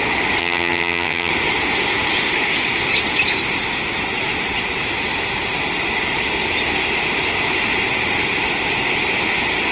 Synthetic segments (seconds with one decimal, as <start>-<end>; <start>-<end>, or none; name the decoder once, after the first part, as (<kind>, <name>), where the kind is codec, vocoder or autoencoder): 0.4-1.3 (vocoder, HiFi-GAN)